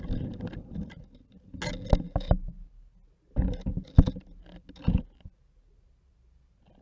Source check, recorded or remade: recorded